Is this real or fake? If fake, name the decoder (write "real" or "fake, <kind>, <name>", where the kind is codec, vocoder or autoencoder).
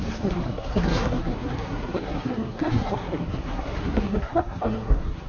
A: fake, codec, SNAC